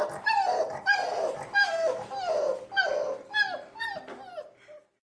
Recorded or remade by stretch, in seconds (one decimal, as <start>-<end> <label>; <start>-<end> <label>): 0.0-5.1 recorded